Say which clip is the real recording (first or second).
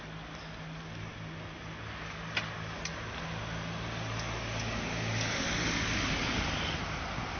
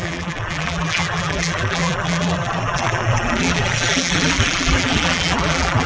first